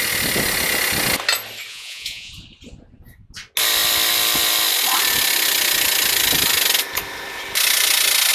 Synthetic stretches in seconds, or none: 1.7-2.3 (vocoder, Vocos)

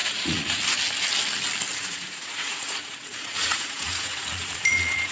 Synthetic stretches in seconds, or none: 0.0-0.6 (vocoder, Vocos); 1.7-5.1

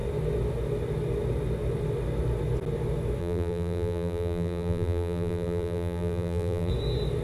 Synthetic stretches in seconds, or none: 3.2-6.7 (vocoder, BigVGAN v2)